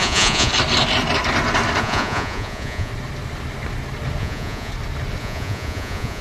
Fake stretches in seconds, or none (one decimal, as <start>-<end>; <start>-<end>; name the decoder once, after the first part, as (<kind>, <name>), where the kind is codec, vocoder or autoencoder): 0.0-0.5 (vocoder, Vocos); 1.8-2.9; 4.2-4.7; 5.2-6.2